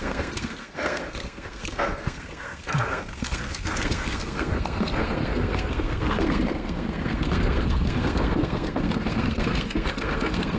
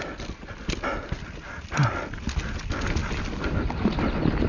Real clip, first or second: second